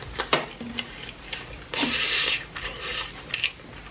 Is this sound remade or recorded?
recorded